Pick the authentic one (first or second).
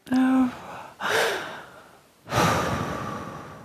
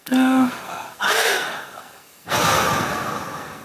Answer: first